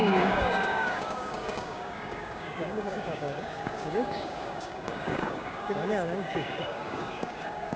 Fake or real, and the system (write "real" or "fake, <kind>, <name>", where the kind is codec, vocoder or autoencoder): fake, codec, DAC